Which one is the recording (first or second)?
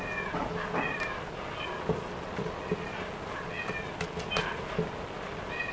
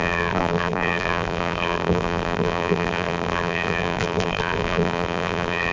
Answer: first